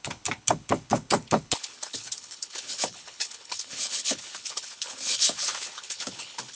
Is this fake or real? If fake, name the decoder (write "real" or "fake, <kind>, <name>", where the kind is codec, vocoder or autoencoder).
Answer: fake, codec, HILCodec